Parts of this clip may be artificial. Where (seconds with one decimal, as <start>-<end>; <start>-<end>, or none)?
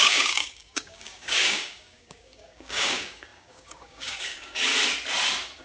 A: 0.0-4.7